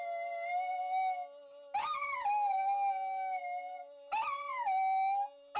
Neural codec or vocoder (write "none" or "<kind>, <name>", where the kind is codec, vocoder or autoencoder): none